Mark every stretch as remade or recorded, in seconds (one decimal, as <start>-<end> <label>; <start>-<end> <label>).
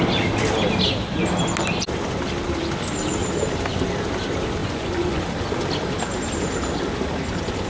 0.0-4.6 recorded; 4.6-5.2 remade; 5.2-7.7 recorded